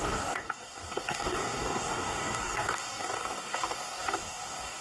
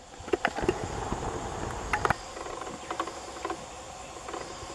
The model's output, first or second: first